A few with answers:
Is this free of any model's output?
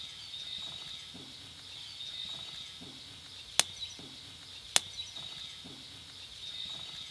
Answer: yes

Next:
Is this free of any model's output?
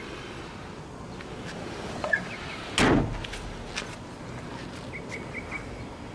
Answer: yes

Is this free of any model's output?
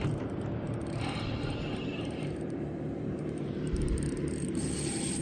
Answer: no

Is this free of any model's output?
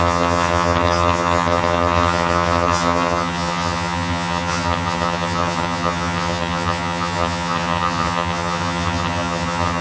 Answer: no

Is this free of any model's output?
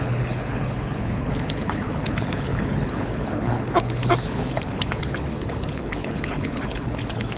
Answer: no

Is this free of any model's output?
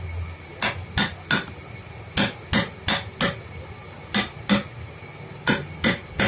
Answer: yes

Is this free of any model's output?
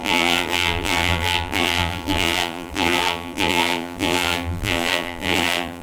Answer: no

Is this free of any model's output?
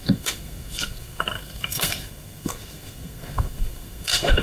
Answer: no